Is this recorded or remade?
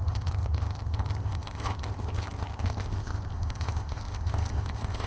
remade